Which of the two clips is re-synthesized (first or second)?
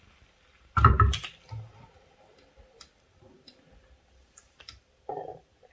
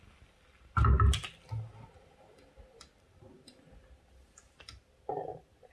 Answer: first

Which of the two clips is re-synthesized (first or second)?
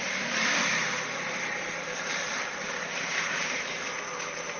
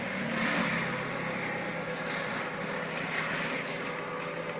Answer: first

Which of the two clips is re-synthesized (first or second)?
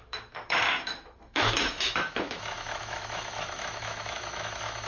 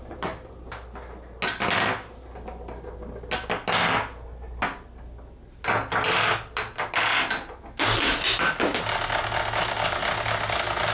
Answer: first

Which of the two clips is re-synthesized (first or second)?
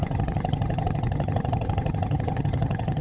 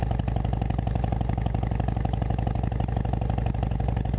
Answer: first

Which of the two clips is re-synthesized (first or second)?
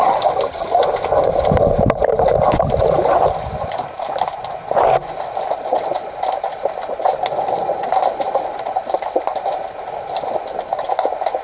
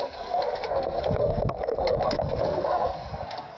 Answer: second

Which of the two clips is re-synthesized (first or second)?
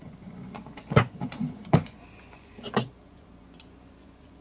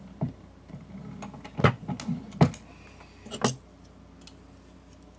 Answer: first